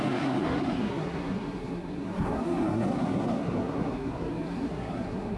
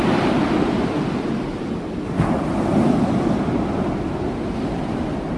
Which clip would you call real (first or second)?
second